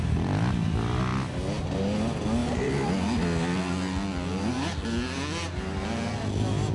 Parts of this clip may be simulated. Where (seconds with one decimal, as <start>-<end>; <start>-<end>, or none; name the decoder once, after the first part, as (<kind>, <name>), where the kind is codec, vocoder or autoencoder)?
none